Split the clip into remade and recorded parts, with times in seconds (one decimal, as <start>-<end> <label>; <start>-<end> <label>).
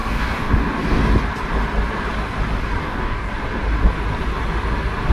0.0-0.5 remade; 0.5-2.8 recorded; 2.8-3.3 remade; 3.3-5.1 recorded